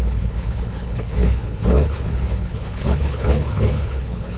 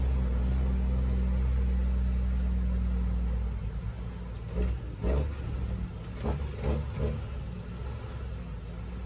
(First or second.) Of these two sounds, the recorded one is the second